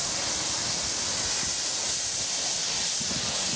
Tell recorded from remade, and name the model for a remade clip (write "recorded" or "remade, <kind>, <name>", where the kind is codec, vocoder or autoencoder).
recorded